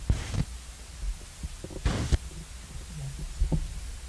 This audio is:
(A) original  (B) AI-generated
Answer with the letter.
A